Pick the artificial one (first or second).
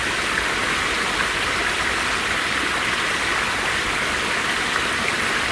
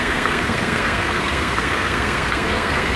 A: second